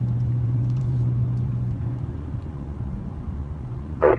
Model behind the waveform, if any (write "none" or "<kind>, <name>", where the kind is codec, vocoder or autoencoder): vocoder, Vocos